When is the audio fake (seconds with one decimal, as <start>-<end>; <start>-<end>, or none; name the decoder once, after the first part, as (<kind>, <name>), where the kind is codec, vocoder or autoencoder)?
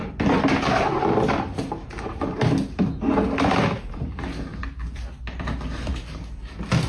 none